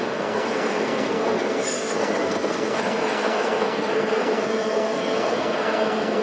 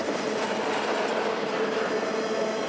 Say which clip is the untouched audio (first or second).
second